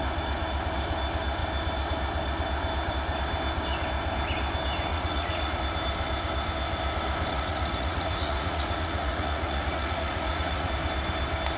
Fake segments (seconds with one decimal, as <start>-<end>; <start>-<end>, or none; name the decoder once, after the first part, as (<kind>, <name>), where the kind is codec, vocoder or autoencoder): 4.9-5.6 (vocoder, Vocos); 7.3-10.7

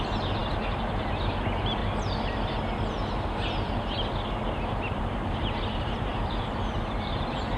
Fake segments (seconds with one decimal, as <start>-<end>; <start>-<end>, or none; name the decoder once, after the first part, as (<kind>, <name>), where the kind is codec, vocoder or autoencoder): 0.0-1.8 (vocoder, BigVGAN v2); 4.9-7.6

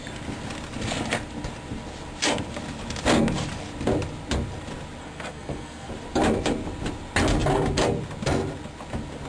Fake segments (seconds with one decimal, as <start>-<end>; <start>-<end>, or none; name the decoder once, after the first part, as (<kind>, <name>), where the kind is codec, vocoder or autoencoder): 5.0-5.9 (codec, SNAC)

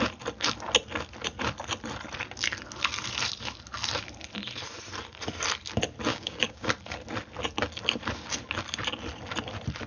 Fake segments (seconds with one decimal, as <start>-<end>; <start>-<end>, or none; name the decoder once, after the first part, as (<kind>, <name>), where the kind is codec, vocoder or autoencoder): 6.1-6.7 (codec, DAC)

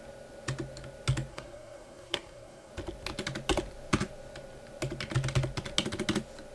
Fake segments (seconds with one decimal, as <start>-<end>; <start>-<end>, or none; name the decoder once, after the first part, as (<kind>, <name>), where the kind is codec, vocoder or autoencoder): 1.3-2.7 (codec, SNAC)

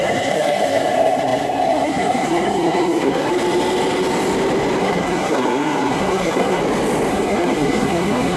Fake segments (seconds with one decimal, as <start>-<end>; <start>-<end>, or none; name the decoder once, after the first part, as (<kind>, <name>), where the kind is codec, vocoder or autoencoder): 0.0-3.3 (codec, SNAC); 4.8-6.6; 7.1-8.4

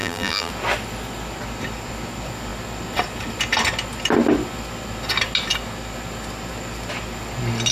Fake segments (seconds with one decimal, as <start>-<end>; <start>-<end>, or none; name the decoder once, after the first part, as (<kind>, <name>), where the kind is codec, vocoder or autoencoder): 0.0-0.5 (vocoder, BigVGAN v2)

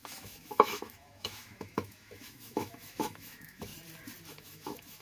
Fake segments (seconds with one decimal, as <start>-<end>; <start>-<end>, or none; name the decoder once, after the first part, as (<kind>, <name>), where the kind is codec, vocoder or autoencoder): 0.0-3.7 (autoencoder, DAC-VAE); 4.3-5.0